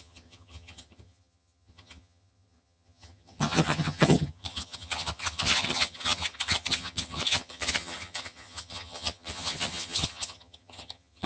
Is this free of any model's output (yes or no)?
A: no